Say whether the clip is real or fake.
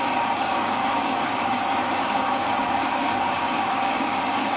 fake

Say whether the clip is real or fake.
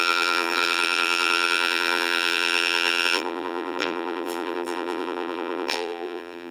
fake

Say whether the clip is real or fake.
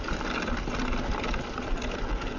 real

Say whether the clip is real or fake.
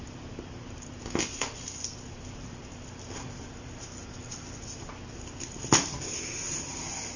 real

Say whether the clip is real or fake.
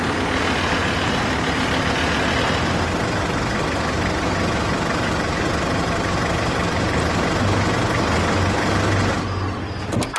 real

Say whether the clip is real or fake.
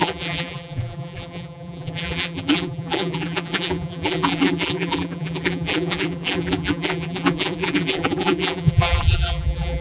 fake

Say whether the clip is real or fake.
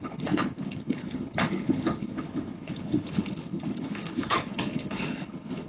fake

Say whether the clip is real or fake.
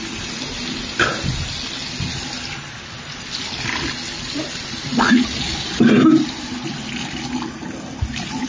real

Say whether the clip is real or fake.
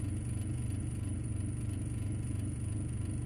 fake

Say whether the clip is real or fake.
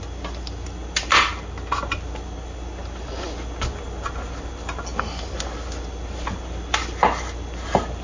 real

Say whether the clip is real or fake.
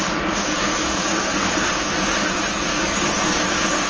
fake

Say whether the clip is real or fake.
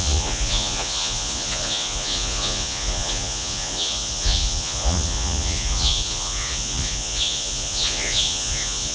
fake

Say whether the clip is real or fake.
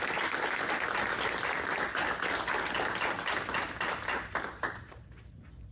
real